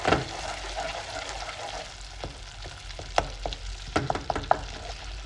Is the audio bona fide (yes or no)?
yes